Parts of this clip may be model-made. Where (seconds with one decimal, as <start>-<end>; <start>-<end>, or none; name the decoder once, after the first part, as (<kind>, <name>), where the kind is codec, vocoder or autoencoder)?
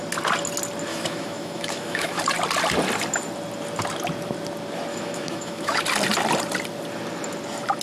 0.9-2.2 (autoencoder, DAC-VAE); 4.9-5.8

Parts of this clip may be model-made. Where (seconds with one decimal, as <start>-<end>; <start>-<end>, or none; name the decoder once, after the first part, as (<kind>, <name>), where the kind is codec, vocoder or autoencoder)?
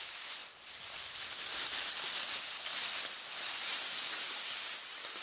4.0-4.8 (codec, DAC)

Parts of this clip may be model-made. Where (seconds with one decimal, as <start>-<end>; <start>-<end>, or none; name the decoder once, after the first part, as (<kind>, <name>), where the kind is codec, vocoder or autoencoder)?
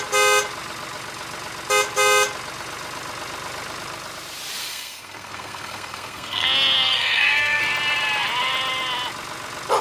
4.6-7.6 (codec, SNAC)